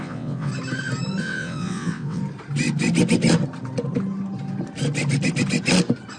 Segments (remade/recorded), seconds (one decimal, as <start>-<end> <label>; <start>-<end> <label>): 0.0-0.5 remade; 0.5-1.2 recorded; 1.2-2.2 remade; 2.2-6.2 recorded